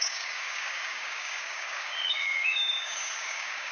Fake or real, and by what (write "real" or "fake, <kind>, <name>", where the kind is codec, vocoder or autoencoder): fake, codec, DAC